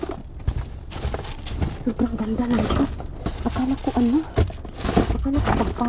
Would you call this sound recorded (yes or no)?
yes